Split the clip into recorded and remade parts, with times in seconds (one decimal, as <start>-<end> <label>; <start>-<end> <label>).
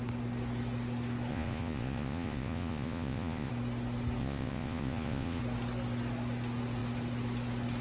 0.0-1.3 recorded; 1.3-3.5 remade; 3.5-4.2 recorded; 4.2-5.4 remade; 5.4-7.8 recorded